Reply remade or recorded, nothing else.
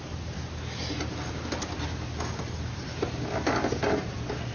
recorded